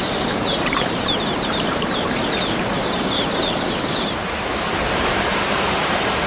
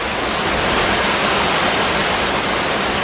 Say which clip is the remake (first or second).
first